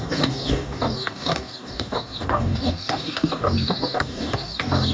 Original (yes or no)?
no